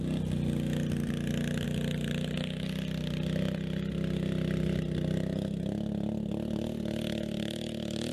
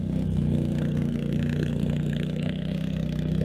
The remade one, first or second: second